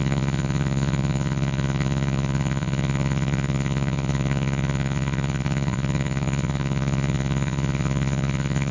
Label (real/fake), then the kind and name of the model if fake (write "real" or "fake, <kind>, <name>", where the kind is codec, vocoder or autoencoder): fake, vocoder, Vocos